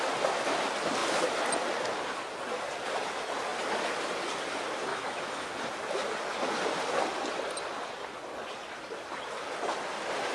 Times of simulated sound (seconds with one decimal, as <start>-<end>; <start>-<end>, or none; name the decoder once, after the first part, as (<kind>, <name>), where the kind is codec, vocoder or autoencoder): 4.9-5.5 (autoencoder, DAC-VAE)